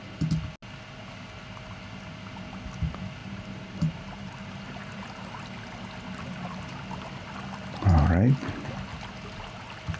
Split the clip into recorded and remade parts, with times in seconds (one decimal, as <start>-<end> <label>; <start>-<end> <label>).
0.0-3.2 recorded; 3.2-5.0 remade; 5.0-10.0 recorded